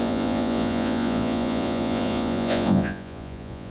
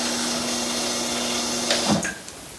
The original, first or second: second